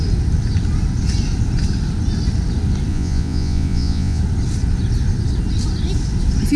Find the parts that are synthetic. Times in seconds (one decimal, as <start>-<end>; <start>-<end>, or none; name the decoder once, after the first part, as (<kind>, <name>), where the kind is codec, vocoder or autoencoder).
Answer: 2.9-4.2 (vocoder, Vocos)